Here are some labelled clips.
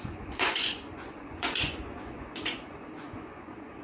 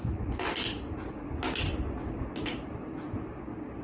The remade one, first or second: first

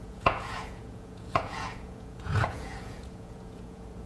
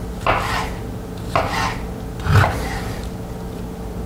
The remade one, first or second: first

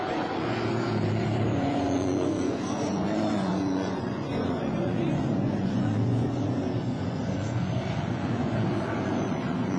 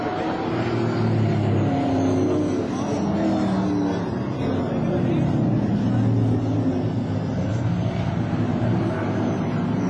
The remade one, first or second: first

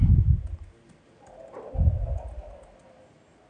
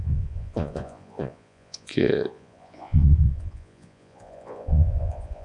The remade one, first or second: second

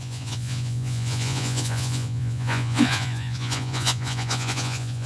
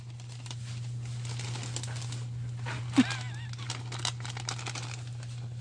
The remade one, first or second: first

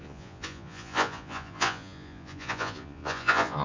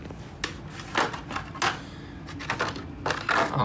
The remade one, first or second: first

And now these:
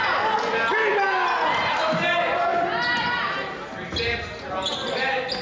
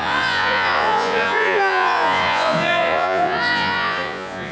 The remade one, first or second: second